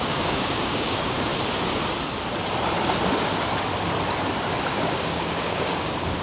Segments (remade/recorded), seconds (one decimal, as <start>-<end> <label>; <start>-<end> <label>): 0.0-1.3 remade; 1.3-4.8 recorded; 4.8-6.2 remade